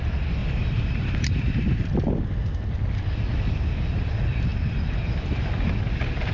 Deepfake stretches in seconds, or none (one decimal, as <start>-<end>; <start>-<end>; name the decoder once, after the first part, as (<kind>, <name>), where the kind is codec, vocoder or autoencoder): 0.4-1.8 (vocoder, BigVGAN v2)